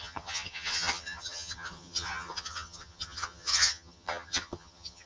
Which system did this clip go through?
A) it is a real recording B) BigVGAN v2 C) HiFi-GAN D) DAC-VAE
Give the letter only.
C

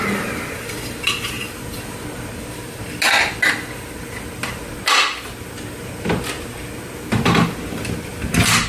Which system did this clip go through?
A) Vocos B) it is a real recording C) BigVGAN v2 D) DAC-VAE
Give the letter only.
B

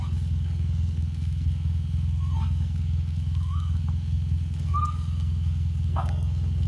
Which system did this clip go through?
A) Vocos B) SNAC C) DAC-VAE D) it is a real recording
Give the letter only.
B